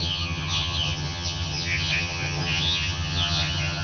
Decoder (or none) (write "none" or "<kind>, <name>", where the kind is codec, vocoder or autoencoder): vocoder, HiFi-GAN